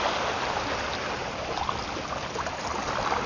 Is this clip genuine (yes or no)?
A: yes